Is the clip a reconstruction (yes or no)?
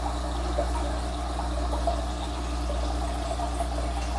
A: no